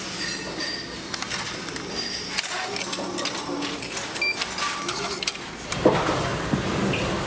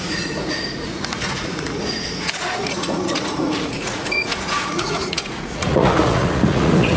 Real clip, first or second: first